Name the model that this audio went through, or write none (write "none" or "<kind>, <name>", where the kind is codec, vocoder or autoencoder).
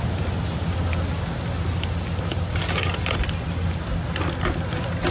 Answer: none